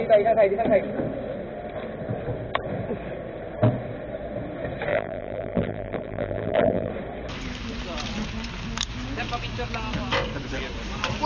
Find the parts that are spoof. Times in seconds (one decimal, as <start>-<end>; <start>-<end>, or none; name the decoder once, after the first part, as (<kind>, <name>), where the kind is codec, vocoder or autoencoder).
4.9-6.9 (vocoder, BigVGAN v2)